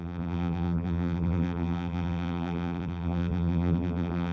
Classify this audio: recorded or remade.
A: remade